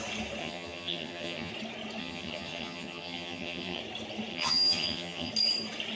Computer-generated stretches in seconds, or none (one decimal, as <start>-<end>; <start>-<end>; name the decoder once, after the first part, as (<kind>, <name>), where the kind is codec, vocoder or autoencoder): 0.4-1.5 (vocoder, HiFi-GAN); 2.0-3.8; 4.3-5.3